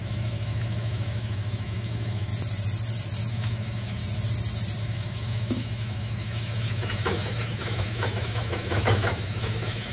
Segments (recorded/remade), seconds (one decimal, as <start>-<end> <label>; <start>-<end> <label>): 0.0-2.3 remade; 2.3-3.3 recorded; 3.3-4.0 remade; 4.0-4.8 recorded; 4.8-9.9 remade